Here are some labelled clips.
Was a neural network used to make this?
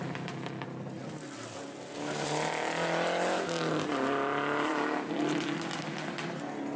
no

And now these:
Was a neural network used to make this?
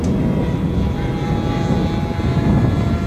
no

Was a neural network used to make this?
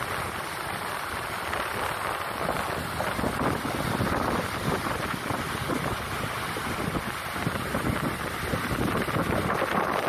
no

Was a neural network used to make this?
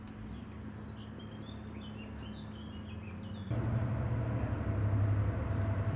no